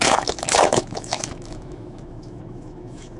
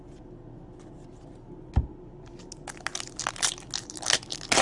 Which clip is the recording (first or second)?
second